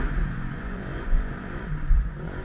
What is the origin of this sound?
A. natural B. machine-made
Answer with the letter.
B